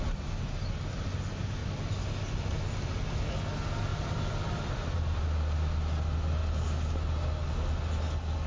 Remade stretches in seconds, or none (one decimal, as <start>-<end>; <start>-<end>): 3.9-5.2